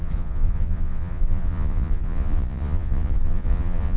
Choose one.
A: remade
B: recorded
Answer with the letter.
A